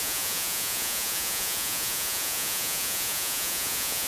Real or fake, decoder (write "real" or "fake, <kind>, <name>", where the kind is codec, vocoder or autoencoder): fake, vocoder, Vocos